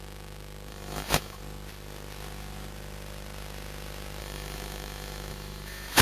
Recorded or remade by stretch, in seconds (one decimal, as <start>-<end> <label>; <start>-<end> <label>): 0.0-0.7 recorded; 0.7-1.4 remade; 1.4-4.2 recorded; 4.2-6.0 remade